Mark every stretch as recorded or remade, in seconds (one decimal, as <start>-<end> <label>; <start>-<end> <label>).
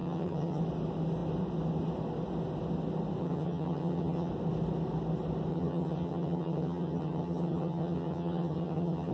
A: 0.0-0.6 remade; 0.6-3.2 recorded; 3.2-4.3 remade; 4.3-5.5 recorded; 5.5-9.1 remade